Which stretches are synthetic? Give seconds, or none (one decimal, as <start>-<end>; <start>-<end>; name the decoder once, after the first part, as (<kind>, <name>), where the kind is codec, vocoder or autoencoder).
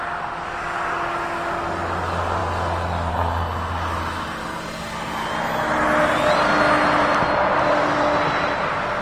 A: none